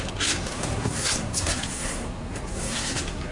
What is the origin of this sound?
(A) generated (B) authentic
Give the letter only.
A